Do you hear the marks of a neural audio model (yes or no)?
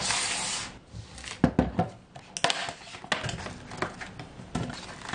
no